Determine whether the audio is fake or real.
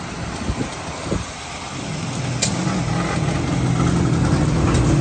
real